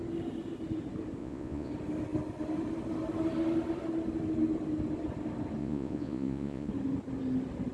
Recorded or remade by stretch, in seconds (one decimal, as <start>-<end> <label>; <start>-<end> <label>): 0.0-1.2 recorded; 1.2-1.7 remade; 1.7-5.6 recorded; 5.6-6.7 remade; 6.7-7.7 recorded